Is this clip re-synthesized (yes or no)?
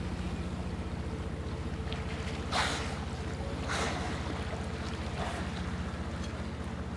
no